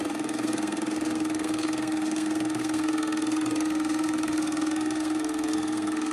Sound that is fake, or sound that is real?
fake